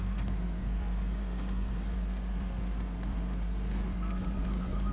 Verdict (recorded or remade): remade